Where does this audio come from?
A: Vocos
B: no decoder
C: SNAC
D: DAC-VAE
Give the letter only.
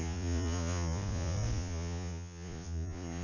A